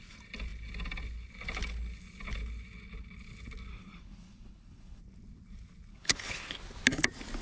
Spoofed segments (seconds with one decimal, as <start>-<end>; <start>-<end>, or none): 3.7-5.0; 5.9-6.6